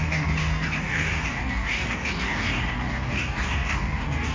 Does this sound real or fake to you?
fake